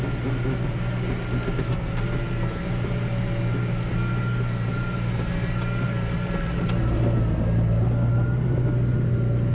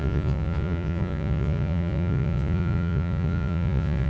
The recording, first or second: first